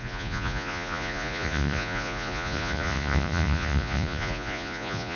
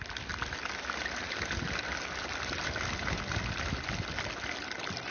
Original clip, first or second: second